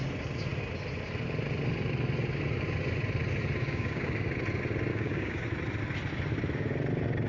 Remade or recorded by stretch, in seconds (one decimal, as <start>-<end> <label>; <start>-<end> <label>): 0.0-3.6 recorded; 3.6-4.3 remade; 4.3-4.9 recorded; 4.9-5.4 remade; 5.4-7.3 recorded